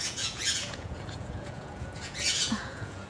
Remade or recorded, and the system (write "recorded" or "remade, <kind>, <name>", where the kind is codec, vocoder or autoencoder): remade, vocoder, Vocos